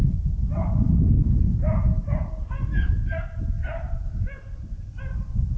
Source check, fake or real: real